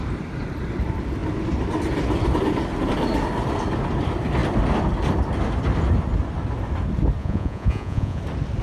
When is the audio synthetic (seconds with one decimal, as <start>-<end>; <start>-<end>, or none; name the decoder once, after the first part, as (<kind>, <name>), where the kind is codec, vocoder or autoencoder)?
7.2-8.2 (vocoder, Vocos)